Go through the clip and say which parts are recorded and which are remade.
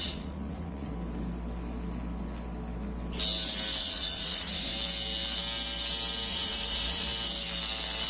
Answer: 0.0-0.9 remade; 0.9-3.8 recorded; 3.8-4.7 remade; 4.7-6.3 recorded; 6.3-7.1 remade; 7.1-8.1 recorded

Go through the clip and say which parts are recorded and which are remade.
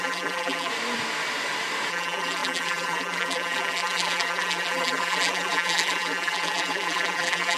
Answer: 0.0-0.7 remade; 0.7-1.9 recorded; 1.9-7.6 remade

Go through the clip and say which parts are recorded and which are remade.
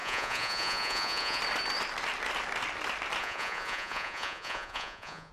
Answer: 0.0-1.4 remade; 1.4-3.2 recorded; 3.2-5.3 remade